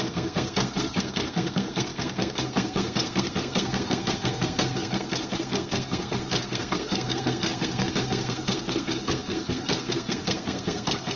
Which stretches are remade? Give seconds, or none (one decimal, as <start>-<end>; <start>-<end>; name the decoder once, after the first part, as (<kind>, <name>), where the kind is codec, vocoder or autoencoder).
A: 0.0-11.2 (codec, SNAC)